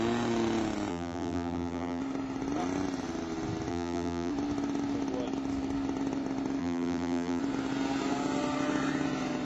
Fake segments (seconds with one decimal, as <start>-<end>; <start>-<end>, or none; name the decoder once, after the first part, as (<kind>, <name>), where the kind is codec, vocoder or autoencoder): 0.9-2.0 (vocoder, BigVGAN v2); 3.7-4.3; 6.6-7.4